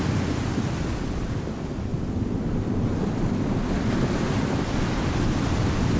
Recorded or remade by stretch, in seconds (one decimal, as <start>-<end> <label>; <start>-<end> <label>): 0.0-6.0 recorded